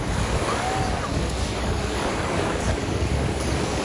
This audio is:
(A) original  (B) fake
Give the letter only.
B